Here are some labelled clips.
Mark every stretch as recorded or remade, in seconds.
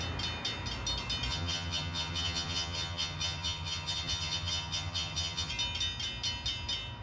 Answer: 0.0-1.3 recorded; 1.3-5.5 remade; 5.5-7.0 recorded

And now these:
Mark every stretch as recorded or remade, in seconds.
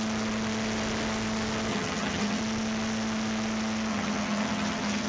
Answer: 0.0-1.7 recorded; 1.7-2.4 remade; 2.4-3.9 recorded; 3.9-5.1 remade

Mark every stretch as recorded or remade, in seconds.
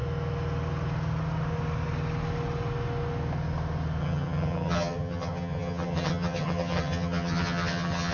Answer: 0.0-4.0 recorded; 4.0-8.1 remade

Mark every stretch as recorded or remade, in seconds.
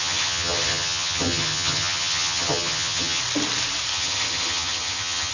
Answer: 0.0-3.2 remade; 3.2-3.9 recorded; 3.9-5.3 remade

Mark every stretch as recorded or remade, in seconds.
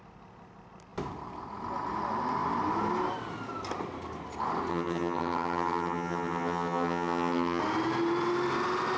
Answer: 0.0-4.7 recorded; 4.7-7.6 remade; 7.6-9.0 recorded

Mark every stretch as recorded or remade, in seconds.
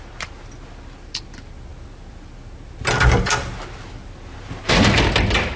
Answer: 0.0-5.6 recorded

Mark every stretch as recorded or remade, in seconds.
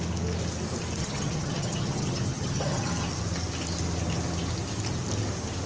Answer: 0.0-1.0 recorded; 1.0-2.9 remade; 2.9-5.7 recorded